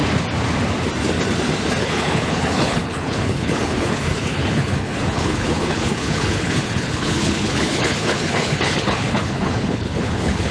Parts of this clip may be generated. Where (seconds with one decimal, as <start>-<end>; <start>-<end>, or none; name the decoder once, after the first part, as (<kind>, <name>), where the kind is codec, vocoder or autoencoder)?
1.8-10.5 (codec, HILCodec)